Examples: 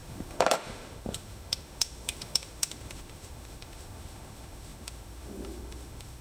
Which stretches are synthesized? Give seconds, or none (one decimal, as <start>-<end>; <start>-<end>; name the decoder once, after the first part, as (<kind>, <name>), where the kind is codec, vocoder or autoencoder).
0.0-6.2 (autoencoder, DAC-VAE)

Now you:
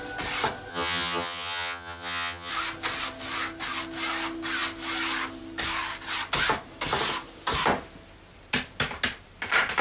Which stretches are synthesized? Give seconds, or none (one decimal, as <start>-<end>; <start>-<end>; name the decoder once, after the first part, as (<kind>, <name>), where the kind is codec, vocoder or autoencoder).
0.7-2.5 (vocoder, HiFi-GAN)

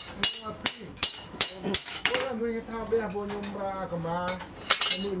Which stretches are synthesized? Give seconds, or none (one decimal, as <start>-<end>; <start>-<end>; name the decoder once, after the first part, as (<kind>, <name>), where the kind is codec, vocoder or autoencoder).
0.6-2.4 (autoencoder, DAC-VAE)